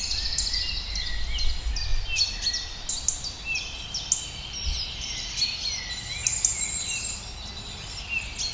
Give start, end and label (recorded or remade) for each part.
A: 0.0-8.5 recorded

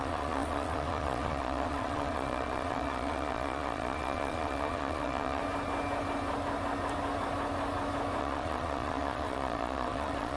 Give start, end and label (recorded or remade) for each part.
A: 0.0-5.4 remade; 5.4-8.2 recorded; 8.2-10.4 remade

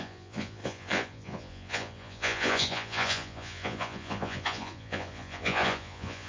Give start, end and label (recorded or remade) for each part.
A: 0.0-6.3 remade

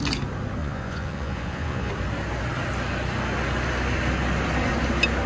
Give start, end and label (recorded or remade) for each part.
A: 0.0-0.6 recorded; 0.6-1.9 remade; 1.9-5.3 recorded